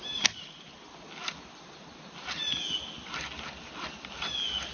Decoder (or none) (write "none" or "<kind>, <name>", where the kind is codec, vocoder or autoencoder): none